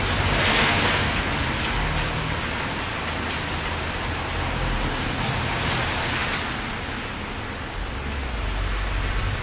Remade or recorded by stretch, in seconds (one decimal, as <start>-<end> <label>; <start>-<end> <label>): 0.0-0.6 recorded; 0.6-1.3 remade; 1.3-9.4 recorded